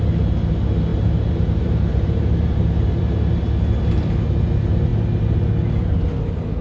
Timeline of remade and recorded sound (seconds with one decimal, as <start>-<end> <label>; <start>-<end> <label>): 0.0-0.9 recorded; 0.9-3.4 remade; 3.4-6.6 recorded